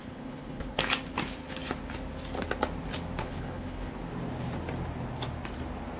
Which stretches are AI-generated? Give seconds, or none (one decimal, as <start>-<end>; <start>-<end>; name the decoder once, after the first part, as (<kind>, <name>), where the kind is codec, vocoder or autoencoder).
0.0-0.8 (codec, HILCodec); 3.2-3.9